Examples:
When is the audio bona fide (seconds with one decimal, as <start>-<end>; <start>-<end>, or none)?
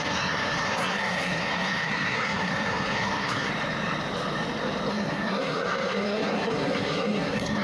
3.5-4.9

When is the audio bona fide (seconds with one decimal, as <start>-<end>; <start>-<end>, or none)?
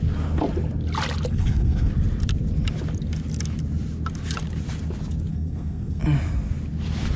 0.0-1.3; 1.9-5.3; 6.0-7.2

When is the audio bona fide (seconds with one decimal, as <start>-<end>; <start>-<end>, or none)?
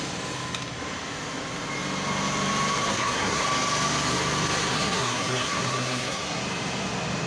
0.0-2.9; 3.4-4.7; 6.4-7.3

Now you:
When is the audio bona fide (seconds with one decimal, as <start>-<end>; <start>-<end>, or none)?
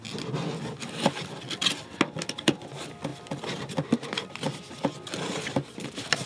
0.0-6.3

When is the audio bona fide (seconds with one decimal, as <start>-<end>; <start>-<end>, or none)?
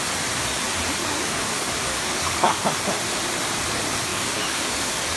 0.0-1.0; 2.6-4.1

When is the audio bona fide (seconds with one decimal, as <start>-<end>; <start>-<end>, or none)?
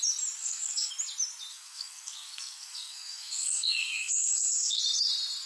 0.0-0.4; 0.9-1.5; 4.8-5.5